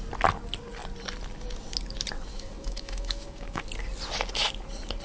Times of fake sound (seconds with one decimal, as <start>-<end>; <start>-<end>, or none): 2.3-3.6